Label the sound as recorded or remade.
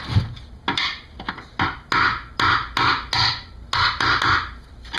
recorded